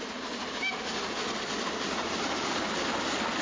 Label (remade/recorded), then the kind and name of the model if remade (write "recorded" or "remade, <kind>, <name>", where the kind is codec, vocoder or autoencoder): recorded